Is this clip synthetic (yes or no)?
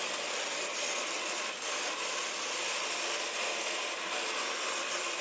no